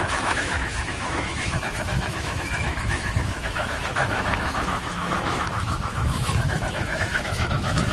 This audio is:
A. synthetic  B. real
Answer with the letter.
A